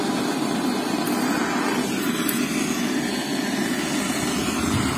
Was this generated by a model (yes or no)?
no